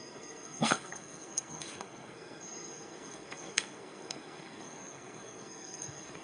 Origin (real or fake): fake